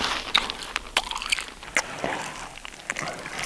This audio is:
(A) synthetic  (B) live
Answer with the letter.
B